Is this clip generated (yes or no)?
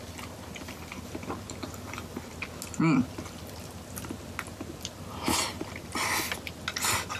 no